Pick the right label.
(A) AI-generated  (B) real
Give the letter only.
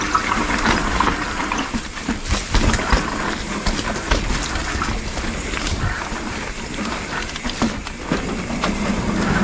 B